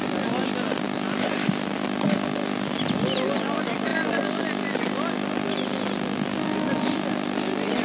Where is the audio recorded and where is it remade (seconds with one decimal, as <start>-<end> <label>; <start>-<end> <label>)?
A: 0.0-7.8 recorded